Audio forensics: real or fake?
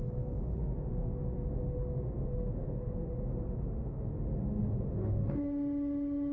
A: fake